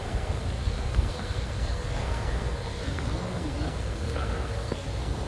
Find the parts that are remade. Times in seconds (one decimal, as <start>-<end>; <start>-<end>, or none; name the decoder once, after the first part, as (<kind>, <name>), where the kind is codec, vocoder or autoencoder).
0.0-5.3 (codec, SNAC)